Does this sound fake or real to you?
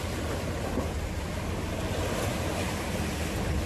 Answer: real